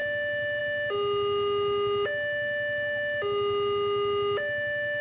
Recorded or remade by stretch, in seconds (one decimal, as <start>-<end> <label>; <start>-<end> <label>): 0.0-5.0 recorded